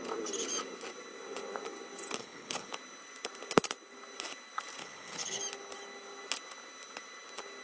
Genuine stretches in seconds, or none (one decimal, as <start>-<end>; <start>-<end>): 0.0-2.2; 2.7-4.8; 5.4-7.6

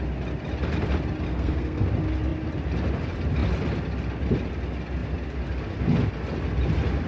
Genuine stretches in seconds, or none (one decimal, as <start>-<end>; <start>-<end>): 0.0-1.3; 1.9-7.1